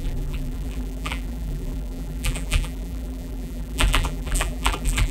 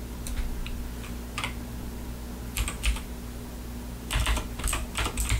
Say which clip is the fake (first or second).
first